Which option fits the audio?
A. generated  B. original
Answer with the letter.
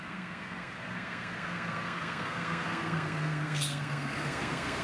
A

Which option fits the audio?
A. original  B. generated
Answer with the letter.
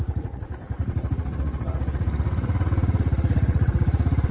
B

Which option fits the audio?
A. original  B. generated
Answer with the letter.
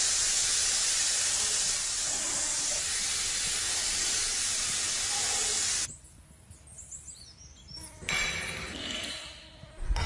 A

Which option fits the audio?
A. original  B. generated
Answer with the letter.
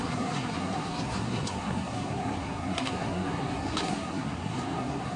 B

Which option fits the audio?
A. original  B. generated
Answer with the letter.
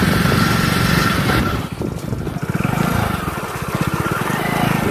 A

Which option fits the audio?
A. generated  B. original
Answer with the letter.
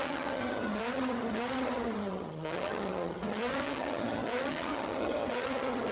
A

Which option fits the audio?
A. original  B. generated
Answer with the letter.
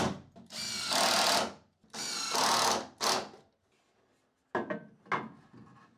A